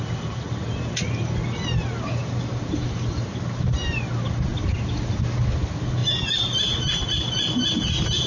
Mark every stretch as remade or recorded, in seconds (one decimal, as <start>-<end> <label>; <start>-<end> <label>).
0.0-2.2 recorded; 2.2-3.6 remade; 3.6-6.0 recorded; 6.0-7.1 remade; 7.1-8.3 recorded